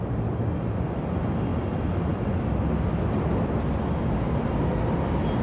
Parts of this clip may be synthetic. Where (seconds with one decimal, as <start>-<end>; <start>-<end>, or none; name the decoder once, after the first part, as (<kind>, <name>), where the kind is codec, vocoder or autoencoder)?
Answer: none